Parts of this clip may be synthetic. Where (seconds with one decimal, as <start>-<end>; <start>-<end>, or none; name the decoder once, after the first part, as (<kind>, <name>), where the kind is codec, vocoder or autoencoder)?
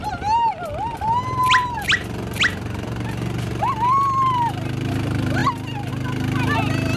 none